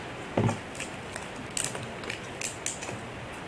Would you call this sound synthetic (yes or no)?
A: no